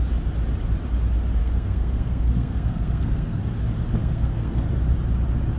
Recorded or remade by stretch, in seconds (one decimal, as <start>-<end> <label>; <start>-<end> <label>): 0.0-1.4 recorded; 1.4-3.4 remade; 3.4-4.0 recorded; 4.0-4.7 remade; 4.7-5.6 recorded